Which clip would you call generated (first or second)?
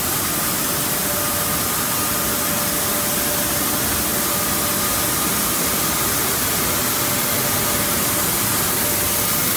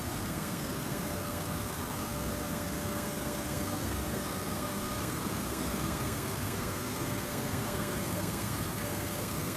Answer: second